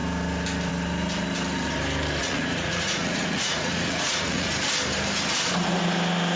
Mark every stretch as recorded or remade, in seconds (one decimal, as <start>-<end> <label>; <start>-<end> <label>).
0.0-2.2 recorded; 2.2-4.5 remade; 4.5-6.4 recorded